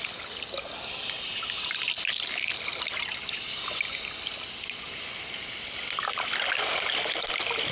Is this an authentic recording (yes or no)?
yes